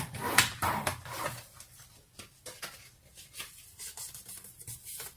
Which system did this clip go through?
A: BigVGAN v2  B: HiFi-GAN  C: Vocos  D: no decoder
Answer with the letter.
A